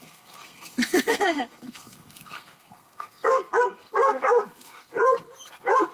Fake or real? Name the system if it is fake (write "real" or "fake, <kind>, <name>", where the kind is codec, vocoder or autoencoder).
fake, codec, SNAC